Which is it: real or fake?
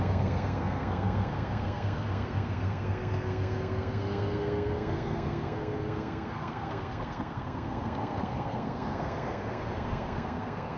fake